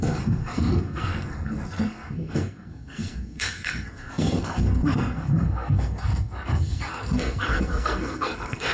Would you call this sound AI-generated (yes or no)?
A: yes